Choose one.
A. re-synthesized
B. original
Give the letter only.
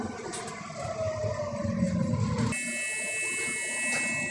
B